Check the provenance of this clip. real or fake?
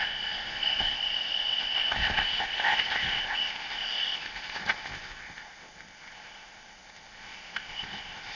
fake